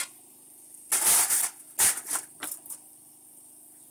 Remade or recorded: recorded